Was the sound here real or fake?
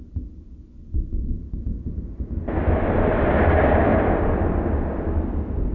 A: real